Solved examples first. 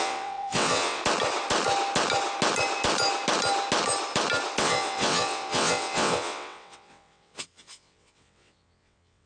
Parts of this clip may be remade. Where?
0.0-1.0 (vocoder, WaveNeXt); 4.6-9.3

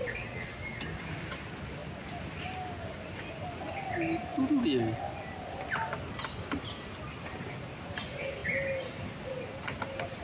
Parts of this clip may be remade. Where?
0.0-0.8 (vocoder, WaveNeXt)

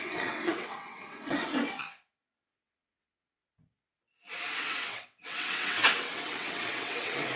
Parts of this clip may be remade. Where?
0.0-3.4 (vocoder, WaveNeXt); 4.6-7.4